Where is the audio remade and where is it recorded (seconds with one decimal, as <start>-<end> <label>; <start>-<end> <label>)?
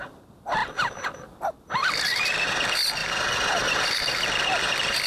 0.0-3.0 recorded; 3.0-4.2 remade; 4.2-5.1 recorded